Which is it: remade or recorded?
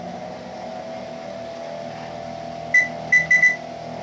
recorded